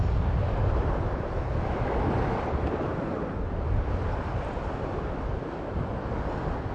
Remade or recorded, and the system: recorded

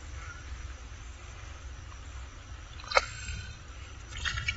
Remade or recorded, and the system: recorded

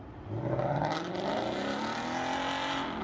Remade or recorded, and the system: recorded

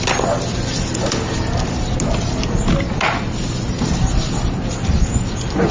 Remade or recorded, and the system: recorded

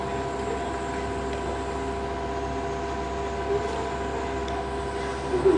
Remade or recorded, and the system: recorded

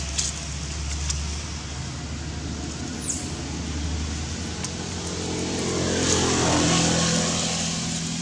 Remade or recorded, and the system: recorded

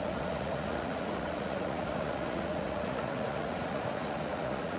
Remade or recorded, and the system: remade, vocoder, Vocos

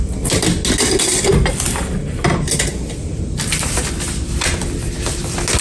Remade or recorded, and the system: recorded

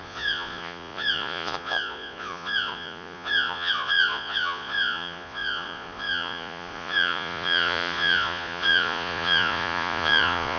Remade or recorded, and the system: remade, vocoder, Vocos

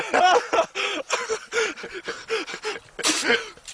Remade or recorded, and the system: recorded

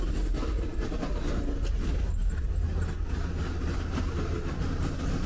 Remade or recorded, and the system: recorded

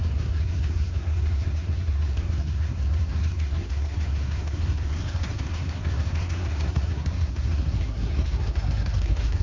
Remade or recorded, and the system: remade, codec, SNAC